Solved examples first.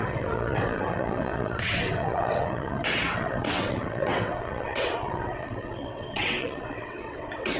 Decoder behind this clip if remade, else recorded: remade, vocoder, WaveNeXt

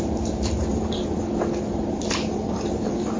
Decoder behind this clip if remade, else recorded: remade, vocoder, BigVGAN v2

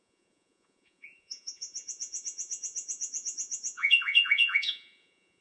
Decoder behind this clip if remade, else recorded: remade, vocoder, Vocos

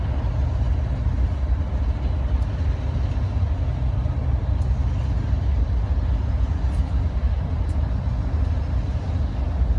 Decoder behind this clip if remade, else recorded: recorded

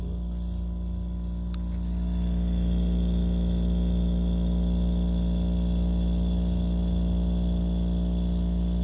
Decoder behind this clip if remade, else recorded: recorded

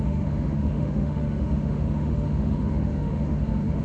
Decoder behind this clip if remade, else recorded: remade, autoencoder, DAC-VAE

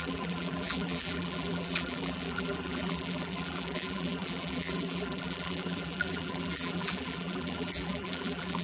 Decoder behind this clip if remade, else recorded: remade, vocoder, BigVGAN v2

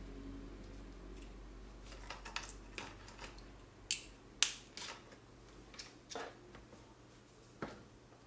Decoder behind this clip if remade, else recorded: recorded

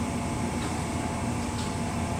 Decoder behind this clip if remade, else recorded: recorded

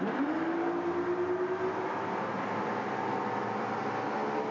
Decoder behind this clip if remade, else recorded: recorded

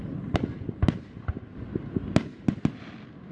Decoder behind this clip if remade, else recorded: recorded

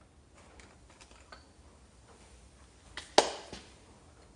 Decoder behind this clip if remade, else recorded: recorded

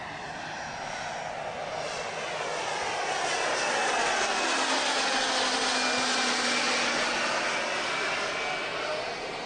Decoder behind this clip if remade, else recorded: recorded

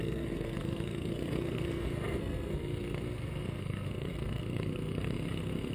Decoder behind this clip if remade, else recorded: remade, codec, SNAC